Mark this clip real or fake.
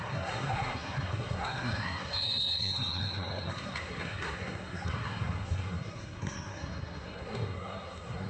fake